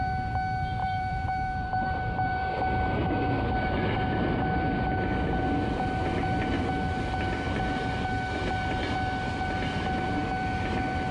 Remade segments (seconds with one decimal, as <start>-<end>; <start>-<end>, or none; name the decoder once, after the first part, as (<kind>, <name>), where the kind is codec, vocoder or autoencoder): 0.8-2.5 (vocoder, BigVGAN v2)